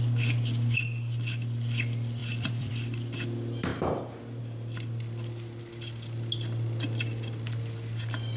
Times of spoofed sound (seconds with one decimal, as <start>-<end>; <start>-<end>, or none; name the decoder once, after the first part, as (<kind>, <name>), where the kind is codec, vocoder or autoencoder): 2.2-2.7 (vocoder, BigVGAN v2)